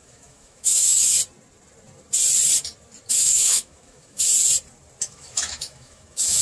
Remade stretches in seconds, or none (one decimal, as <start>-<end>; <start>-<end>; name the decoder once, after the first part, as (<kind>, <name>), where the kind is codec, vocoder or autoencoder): 0.0-1.2 (autoencoder, DAC-VAE); 3.1-4.3; 5.0-6.4